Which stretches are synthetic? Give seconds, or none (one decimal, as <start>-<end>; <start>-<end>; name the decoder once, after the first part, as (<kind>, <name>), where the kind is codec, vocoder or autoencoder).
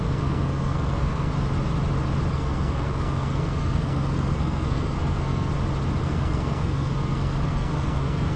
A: 0.0-1.3 (codec, SNAC); 2.3-5.5; 6.0-8.4